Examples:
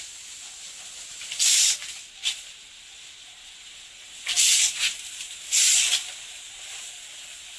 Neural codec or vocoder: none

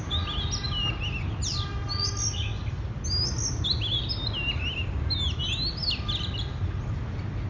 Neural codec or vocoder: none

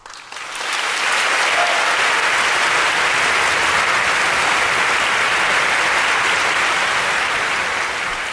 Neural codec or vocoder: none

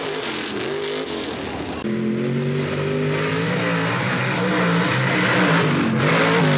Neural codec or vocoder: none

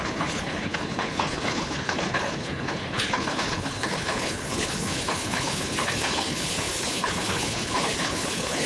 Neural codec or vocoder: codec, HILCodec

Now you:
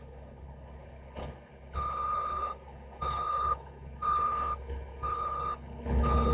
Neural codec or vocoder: codec, HILCodec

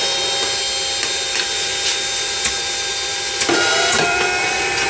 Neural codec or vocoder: none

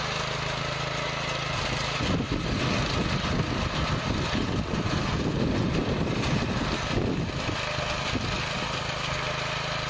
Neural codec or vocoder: none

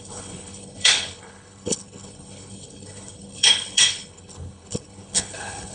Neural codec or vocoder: codec, HILCodec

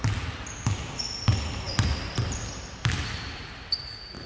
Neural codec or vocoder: none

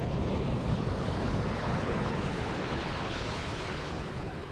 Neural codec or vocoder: codec, HILCodec